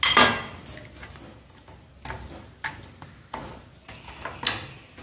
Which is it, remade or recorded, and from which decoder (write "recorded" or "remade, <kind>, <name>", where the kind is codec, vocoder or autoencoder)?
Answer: recorded